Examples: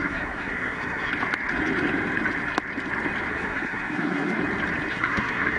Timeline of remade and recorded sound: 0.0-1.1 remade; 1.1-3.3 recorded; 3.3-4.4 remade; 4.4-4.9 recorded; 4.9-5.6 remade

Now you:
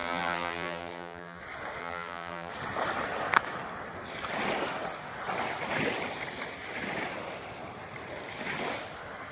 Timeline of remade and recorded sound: 0.0-1.4 remade; 1.4-1.8 recorded; 1.8-2.5 remade; 2.5-9.3 recorded